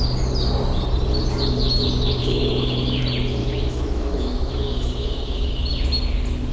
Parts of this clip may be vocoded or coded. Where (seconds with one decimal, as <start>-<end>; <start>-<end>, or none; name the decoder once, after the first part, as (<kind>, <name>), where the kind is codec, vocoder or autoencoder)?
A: 2.2-3.0 (autoencoder, DAC-VAE); 3.4-5.5